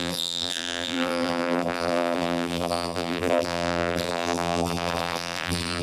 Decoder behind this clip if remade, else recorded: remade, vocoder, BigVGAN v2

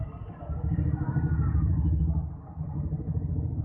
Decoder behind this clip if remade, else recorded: recorded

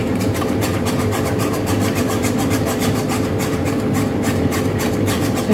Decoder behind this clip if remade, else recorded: remade, vocoder, BigVGAN v2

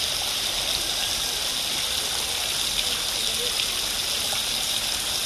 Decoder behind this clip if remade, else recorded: recorded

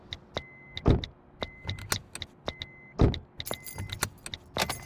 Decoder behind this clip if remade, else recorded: recorded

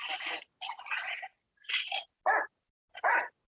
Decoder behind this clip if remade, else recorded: recorded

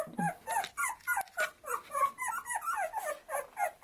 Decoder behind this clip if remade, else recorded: recorded